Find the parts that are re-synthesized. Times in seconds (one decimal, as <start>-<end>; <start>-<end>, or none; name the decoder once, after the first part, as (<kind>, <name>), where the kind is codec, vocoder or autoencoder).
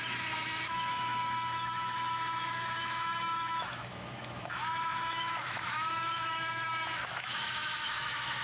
0.0-8.4 (autoencoder, DAC-VAE)